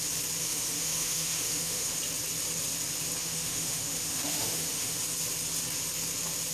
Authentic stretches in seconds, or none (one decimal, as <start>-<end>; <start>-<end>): 0.0-0.4; 2.0-3.2; 5.0-6.5